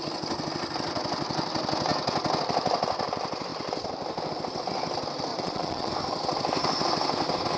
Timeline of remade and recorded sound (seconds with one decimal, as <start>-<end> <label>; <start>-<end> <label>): 0.0-5.3 recorded; 5.3-5.9 remade; 5.9-7.6 recorded